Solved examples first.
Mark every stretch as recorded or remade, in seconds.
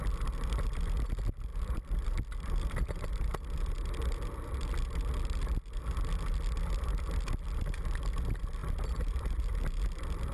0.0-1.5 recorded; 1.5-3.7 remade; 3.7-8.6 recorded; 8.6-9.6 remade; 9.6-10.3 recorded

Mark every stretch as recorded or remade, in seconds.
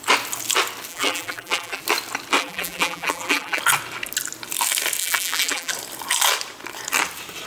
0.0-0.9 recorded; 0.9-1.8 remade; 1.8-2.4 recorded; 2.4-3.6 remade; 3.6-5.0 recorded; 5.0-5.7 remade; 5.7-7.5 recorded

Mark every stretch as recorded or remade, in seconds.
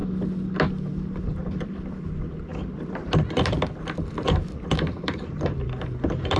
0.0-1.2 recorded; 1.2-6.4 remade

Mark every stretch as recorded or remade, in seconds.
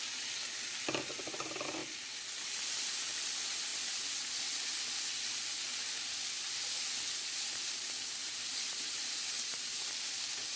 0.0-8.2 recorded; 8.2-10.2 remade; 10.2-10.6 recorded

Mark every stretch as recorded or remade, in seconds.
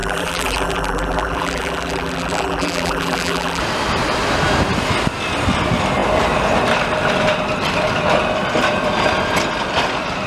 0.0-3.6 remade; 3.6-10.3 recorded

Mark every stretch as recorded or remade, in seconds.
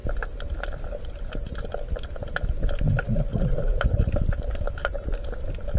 0.0-3.3 recorded; 3.3-4.9 remade; 4.9-5.8 recorded